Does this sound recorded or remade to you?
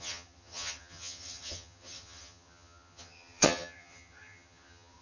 remade